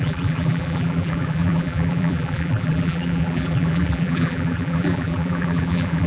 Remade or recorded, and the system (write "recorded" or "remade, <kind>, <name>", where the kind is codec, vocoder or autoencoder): remade, vocoder, BigVGAN v2